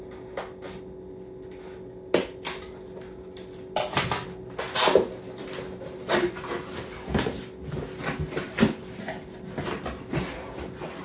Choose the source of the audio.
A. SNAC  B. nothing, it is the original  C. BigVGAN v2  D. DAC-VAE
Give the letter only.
B